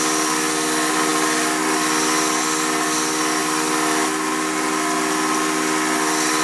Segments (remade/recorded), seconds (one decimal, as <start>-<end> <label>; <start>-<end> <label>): 0.0-6.4 recorded